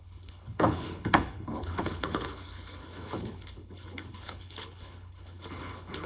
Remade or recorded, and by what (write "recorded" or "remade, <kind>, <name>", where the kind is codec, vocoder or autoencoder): remade, codec, HILCodec